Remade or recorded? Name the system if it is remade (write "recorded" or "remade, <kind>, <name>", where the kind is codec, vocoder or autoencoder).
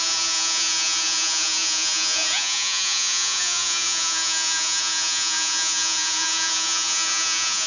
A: remade, vocoder, Vocos